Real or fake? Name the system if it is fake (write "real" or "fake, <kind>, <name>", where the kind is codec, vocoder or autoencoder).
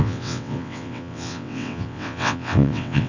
fake, vocoder, WaveNeXt